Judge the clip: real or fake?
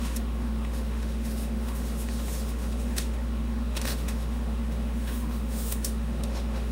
fake